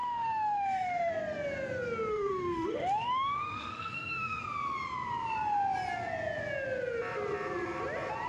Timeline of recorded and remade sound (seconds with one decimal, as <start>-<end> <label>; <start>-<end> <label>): 0.0-1.1 remade; 1.1-2.1 recorded; 2.1-4.4 remade; 4.4-8.3 recorded